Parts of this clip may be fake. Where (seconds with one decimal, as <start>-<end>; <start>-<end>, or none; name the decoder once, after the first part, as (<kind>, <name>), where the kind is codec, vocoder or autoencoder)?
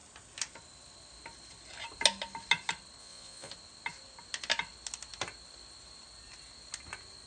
3.0-3.5 (vocoder, Vocos)